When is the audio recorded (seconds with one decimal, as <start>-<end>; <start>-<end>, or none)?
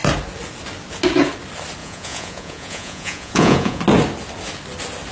0.0-1.8; 3.8-5.1